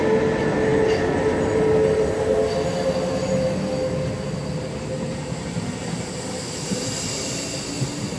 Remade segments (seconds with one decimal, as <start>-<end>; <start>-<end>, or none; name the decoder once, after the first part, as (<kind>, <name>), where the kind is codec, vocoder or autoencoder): none